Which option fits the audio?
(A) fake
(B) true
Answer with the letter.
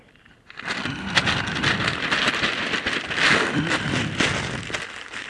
B